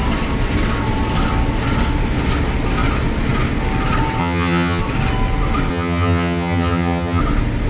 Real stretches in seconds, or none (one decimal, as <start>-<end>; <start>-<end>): 0.0-4.2; 4.8-5.7; 7.2-7.7

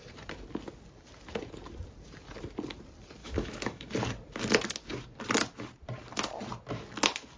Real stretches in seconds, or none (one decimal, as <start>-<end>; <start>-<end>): 0.0-3.2; 3.9-7.4

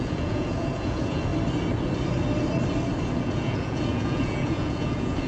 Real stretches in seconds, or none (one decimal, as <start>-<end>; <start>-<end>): 1.3-3.2

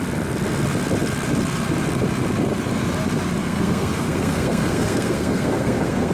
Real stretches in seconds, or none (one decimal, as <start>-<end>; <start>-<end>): 0.0-3.4

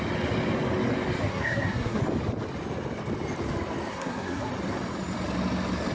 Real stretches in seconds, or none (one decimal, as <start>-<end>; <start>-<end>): 0.0-1.3; 2.0-3.9; 4.5-5.9

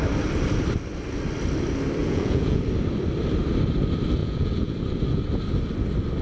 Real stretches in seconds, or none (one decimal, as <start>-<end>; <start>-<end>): 0.0-2.0; 2.6-4.2; 4.7-6.2